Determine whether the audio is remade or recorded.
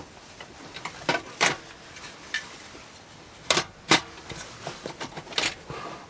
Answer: recorded